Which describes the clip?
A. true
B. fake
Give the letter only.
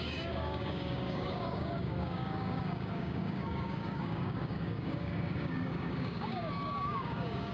B